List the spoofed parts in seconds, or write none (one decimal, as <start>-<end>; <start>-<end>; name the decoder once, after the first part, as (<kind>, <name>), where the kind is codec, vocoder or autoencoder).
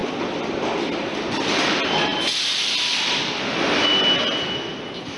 0.0-1.0 (vocoder, BigVGAN v2); 2.1-5.2